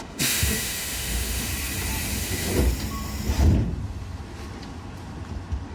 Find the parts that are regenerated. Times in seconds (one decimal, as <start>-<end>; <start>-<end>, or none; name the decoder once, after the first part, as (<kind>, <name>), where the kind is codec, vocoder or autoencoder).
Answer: 0.0-1.5 (autoencoder, DAC-VAE); 2.1-2.5